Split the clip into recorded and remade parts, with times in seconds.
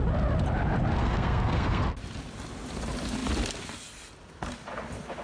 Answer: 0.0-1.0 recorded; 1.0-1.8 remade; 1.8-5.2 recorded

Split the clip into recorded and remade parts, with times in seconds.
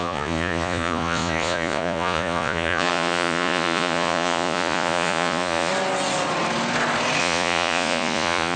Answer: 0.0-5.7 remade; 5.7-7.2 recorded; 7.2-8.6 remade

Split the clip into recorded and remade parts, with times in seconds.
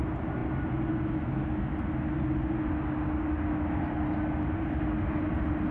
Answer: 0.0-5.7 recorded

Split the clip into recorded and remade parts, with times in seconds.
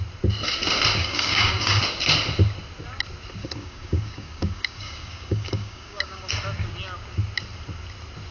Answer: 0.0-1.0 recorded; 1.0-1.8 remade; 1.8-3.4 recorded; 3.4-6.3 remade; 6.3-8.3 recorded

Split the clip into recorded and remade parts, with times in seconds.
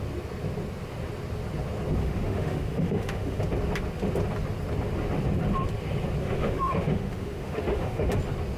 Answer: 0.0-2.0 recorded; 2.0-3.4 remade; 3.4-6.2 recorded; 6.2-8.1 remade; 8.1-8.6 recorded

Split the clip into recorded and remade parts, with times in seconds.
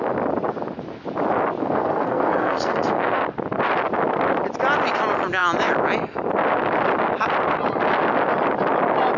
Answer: 0.0-1.6 recorded; 1.6-3.2 remade; 3.2-9.2 recorded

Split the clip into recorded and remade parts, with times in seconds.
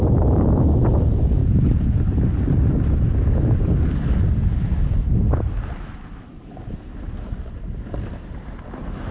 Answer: 0.0-1.4 recorded; 1.4-2.0 remade; 2.0-9.1 recorded